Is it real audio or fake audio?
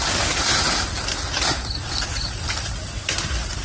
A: real